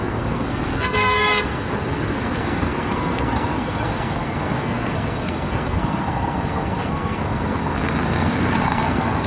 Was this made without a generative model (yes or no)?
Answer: no